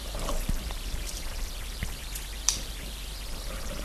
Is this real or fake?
fake